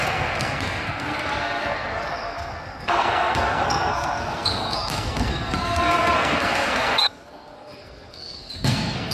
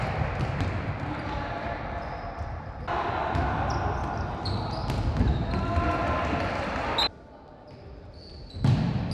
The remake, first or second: first